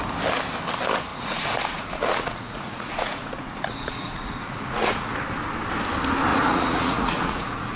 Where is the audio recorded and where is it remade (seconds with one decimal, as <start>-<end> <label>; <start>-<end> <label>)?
0.0-1.1 recorded; 1.1-5.1 remade; 5.1-6.3 recorded; 6.3-7.8 remade